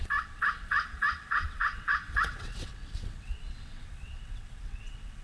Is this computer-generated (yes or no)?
yes